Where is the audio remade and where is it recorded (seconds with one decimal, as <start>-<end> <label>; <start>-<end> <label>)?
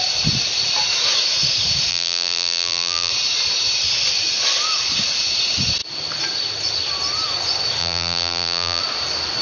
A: 0.0-1.9 recorded; 1.9-3.1 remade; 3.1-7.8 recorded; 7.8-8.8 remade; 8.8-9.4 recorded